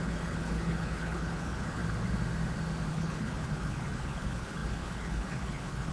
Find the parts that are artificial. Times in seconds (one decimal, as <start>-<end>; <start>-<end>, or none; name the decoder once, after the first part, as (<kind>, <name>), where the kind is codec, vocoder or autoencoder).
0.0-1.8 (codec, HILCodec); 2.9-5.9